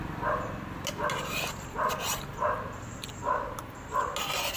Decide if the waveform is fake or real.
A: real